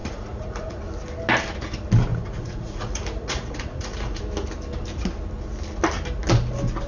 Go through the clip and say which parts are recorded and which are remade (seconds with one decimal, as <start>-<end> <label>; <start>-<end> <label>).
0.0-0.8 remade; 0.8-2.1 recorded; 2.1-4.2 remade; 4.2-6.9 recorded